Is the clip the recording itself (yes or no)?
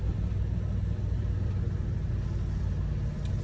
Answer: yes